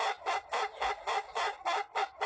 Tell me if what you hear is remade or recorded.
recorded